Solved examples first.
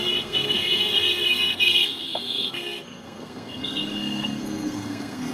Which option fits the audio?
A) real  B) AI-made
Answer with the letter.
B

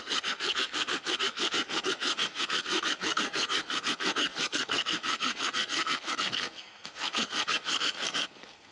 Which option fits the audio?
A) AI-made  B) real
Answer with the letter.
A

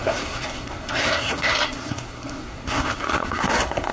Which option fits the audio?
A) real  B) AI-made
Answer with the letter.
B